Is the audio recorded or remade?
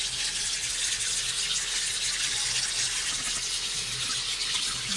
recorded